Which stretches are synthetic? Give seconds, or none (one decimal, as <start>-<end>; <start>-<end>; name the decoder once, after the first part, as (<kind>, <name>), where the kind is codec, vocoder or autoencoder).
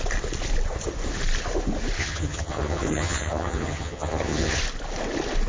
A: 2.0-4.6 (vocoder, HiFi-GAN)